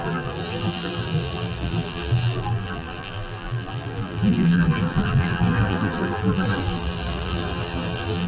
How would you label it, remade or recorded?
remade